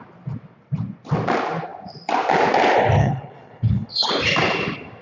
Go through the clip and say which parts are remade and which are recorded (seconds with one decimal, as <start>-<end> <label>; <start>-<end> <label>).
0.0-3.0 recorded; 3.0-4.1 remade; 4.1-5.0 recorded